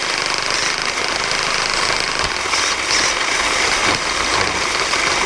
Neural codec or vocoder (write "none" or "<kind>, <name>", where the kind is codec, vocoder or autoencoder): none